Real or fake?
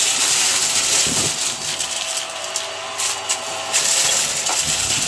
real